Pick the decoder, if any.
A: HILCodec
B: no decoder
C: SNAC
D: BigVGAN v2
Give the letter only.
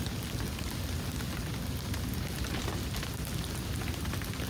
B